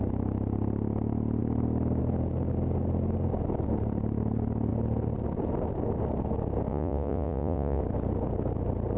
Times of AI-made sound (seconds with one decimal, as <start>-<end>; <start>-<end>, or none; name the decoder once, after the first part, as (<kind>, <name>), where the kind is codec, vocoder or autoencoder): 6.7-7.8 (vocoder, Vocos)